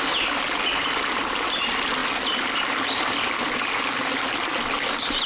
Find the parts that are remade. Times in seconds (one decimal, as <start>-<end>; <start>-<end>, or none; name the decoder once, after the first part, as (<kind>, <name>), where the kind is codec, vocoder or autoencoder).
none